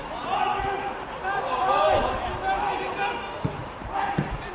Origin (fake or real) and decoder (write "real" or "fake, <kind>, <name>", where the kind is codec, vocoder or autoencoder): real